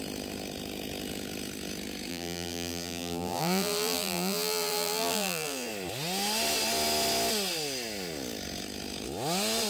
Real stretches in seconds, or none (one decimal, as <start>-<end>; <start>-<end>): 0.0-2.1; 5.7-9.7